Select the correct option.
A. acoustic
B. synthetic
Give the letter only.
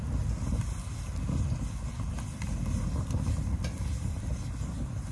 A